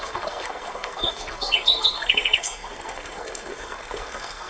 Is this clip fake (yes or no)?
yes